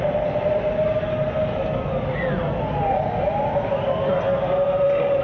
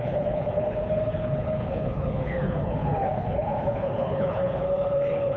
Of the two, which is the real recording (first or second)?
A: first